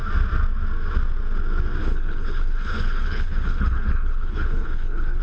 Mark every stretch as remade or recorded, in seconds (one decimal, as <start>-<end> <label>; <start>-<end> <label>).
0.0-1.8 recorded; 1.8-5.2 remade